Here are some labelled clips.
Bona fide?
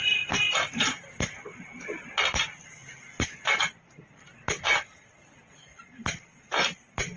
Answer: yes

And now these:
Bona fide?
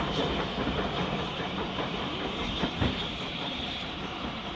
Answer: no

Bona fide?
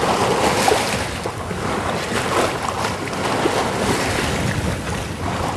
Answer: yes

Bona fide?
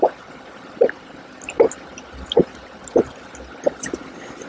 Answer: yes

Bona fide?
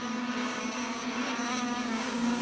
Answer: no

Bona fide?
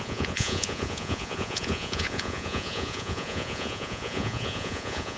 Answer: no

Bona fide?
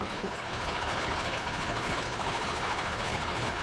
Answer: no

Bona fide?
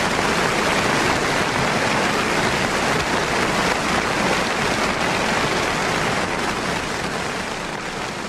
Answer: yes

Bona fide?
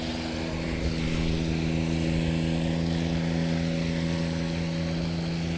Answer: yes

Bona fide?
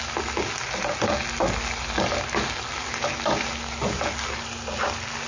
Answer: yes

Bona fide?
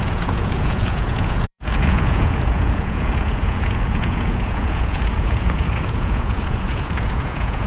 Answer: no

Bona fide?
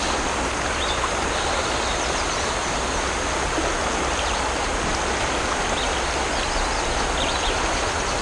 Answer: yes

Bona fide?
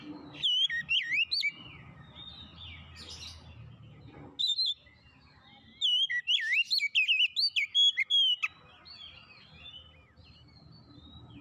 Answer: yes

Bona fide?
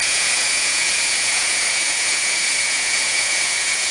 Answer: no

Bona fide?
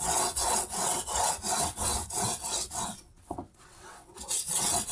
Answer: no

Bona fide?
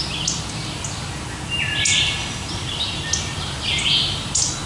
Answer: yes